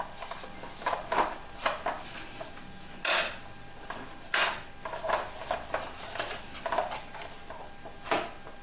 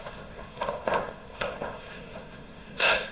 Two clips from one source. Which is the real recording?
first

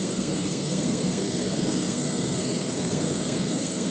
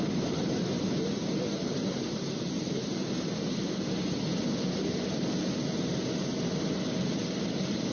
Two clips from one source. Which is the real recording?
second